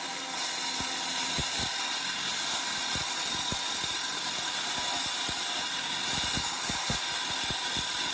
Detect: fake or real real